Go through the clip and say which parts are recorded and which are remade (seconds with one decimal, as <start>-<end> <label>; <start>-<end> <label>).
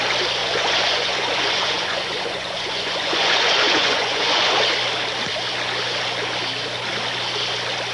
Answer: 0.0-0.4 recorded; 0.4-4.5 remade; 4.5-7.9 recorded